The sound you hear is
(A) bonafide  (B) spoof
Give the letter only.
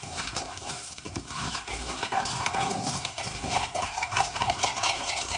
B